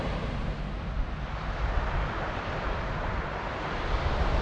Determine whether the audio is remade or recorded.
recorded